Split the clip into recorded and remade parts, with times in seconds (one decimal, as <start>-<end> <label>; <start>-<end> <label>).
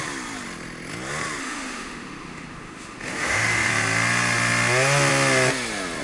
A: 0.0-1.4 recorded; 1.4-3.7 remade; 3.7-6.0 recorded